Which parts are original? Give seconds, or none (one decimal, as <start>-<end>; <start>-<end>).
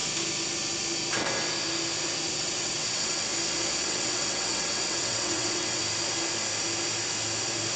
0.0-2.3; 3.3-3.8; 5.8-7.8